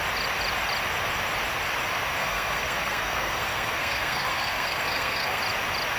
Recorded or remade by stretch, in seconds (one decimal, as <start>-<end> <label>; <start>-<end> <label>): 0.0-2.2 recorded; 2.2-5.4 remade; 5.4-6.0 recorded